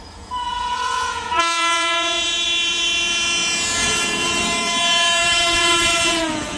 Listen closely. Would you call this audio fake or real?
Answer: fake